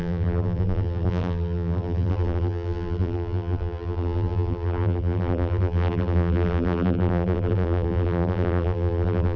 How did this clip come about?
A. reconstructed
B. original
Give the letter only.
A